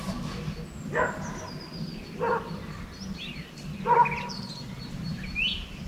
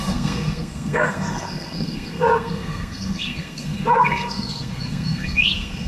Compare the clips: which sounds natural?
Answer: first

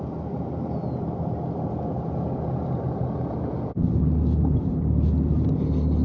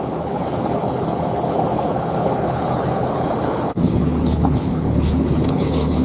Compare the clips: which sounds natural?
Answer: first